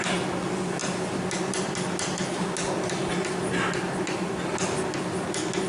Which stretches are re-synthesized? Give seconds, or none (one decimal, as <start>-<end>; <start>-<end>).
none